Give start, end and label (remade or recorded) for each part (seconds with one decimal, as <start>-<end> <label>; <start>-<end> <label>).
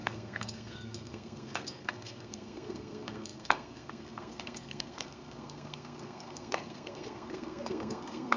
0.0-8.4 remade